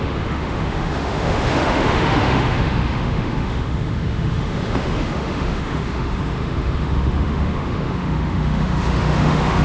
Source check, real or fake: fake